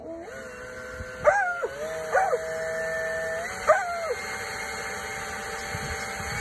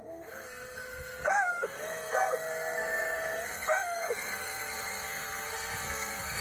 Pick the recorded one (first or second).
first